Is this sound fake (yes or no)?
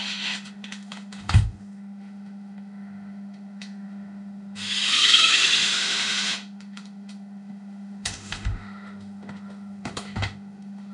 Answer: yes